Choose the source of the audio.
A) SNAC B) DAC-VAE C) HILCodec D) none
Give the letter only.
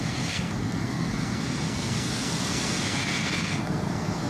A